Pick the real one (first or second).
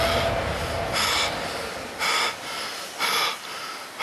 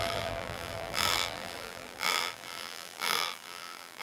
first